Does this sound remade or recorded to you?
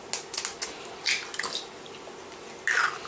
recorded